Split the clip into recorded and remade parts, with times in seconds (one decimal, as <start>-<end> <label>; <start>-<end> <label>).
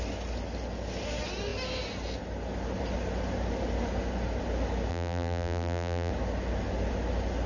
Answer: 0.0-4.9 recorded; 4.9-6.1 remade; 6.1-7.5 recorded